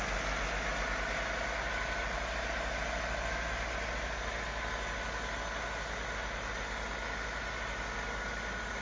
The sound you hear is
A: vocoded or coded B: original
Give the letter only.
B